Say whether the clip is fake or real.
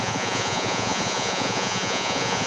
fake